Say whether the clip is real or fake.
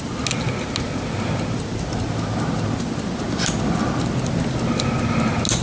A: real